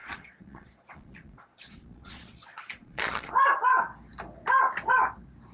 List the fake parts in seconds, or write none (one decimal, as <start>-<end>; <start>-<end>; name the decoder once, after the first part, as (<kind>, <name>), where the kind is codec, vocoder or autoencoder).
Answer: 0.0-3.3 (vocoder, Vocos)